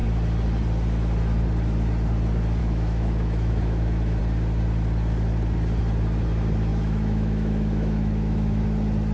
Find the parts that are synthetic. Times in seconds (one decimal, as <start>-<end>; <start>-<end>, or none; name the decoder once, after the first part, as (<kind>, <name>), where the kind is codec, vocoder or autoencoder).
2.6-4.2 (autoencoder, DAC-VAE); 6.7-8.6